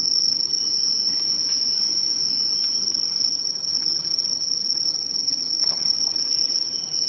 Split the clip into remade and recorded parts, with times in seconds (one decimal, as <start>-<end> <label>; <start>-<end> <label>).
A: 0.0-0.6 remade; 0.6-2.8 recorded; 2.8-7.1 remade